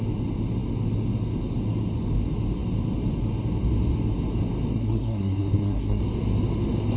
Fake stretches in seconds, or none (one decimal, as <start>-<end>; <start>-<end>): 4.7-6.0